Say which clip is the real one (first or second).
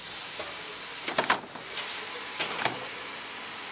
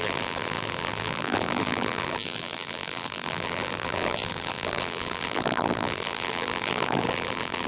first